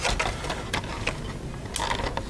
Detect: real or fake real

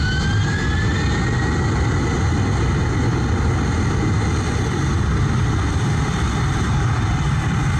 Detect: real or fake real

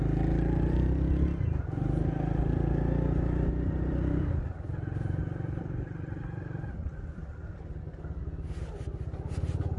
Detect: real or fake real